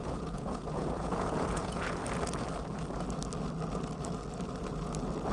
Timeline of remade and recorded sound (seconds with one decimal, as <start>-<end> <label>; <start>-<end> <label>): 0.0-2.0 remade; 2.0-5.3 recorded